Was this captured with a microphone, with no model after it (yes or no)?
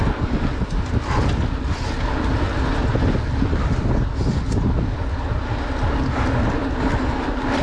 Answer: yes